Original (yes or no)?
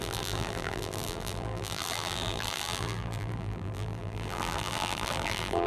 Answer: no